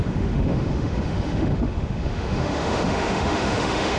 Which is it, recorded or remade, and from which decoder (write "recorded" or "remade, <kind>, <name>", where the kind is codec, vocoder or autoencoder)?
remade, autoencoder, DAC-VAE